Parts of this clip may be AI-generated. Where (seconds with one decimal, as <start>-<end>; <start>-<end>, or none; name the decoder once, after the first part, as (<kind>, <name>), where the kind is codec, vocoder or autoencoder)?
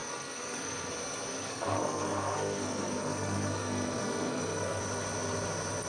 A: 0.0-0.9 (codec, SNAC); 1.3-4.8